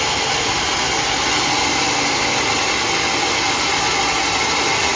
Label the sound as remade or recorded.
recorded